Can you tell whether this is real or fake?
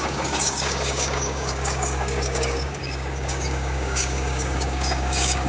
fake